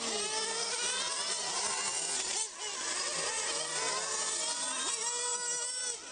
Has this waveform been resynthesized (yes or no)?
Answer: no